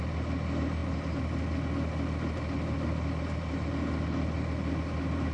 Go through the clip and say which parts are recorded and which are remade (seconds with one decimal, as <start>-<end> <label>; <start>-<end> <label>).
0.0-5.3 recorded